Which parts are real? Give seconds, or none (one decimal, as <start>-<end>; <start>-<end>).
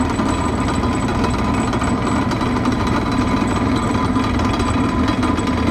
0.0-2.7; 3.9-5.7